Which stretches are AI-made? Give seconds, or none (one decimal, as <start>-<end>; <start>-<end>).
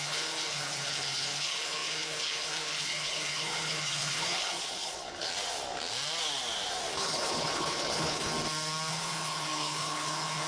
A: 0.0-5.3; 6.9-8.3; 8.9-10.5